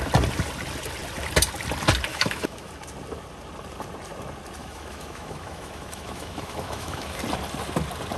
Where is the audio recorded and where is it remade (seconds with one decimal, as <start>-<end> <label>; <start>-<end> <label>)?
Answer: 0.0-2.1 recorded; 2.1-2.7 remade; 2.7-4.6 recorded; 4.6-7.2 remade; 7.2-8.2 recorded